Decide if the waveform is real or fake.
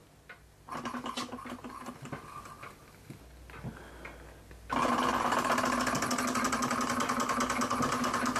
real